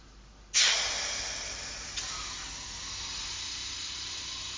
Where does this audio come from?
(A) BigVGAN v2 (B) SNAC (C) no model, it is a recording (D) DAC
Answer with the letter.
C